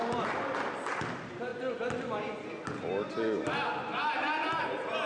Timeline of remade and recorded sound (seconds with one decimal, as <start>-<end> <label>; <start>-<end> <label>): 0.0-5.1 recorded